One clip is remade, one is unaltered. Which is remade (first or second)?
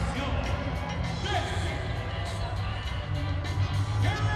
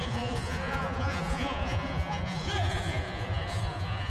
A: second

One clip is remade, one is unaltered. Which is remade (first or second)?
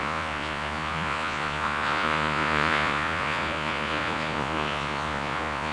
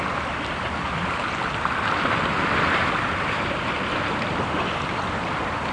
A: first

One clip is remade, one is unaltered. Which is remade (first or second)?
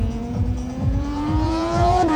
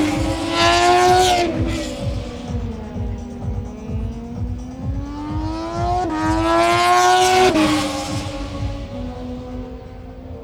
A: first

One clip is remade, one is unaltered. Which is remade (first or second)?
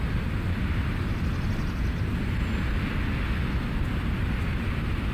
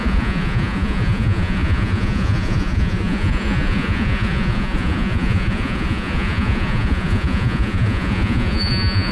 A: second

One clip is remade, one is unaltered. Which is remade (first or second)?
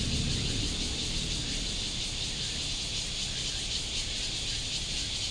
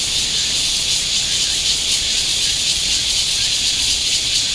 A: second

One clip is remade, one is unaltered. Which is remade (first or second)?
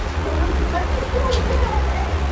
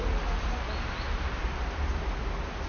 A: first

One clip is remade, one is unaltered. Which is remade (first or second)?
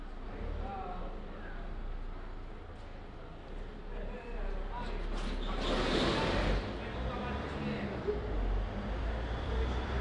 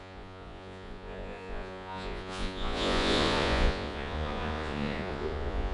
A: second